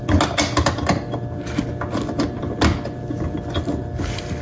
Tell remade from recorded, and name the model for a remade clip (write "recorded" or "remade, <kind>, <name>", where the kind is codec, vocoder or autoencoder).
recorded